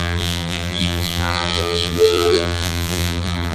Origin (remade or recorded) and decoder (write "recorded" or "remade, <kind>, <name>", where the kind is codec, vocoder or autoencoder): remade, vocoder, BigVGAN v2